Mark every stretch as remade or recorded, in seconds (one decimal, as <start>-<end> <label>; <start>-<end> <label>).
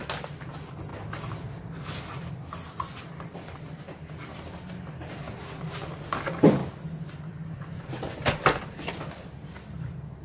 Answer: 0.0-10.2 recorded